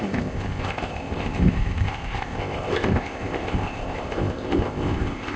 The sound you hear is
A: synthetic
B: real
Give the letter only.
A